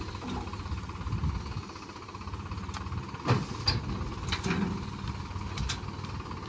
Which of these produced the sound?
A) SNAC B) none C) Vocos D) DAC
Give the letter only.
B